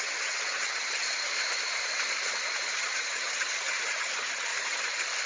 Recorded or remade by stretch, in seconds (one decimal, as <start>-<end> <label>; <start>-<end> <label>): 0.0-1.3 remade; 1.3-2.8 recorded; 2.8-4.5 remade; 4.5-5.3 recorded